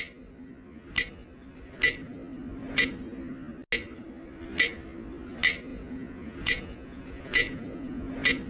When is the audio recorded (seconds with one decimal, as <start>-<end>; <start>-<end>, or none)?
0.0-5.7; 8.1-8.5